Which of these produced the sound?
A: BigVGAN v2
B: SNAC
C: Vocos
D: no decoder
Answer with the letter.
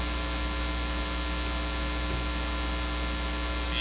D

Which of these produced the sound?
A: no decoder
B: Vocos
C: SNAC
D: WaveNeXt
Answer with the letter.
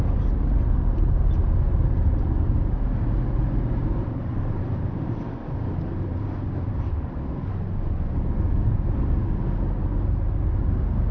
A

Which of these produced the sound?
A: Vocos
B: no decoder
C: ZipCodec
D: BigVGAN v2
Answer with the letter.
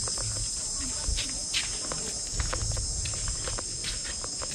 B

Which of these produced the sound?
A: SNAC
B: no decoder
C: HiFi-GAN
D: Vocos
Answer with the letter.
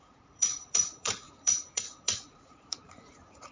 D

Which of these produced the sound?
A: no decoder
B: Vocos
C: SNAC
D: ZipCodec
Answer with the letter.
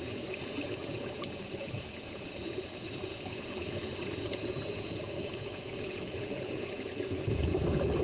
B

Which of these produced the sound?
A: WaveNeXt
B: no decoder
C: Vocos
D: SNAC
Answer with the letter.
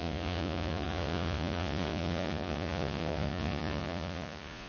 C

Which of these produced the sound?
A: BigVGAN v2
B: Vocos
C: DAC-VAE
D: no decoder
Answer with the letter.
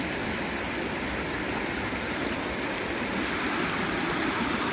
D